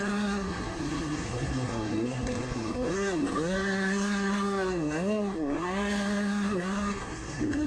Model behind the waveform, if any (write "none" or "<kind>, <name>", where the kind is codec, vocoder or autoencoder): codec, SNAC